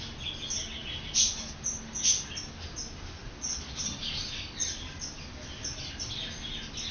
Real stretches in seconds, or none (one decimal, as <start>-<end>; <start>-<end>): 0.0-3.2; 3.8-6.9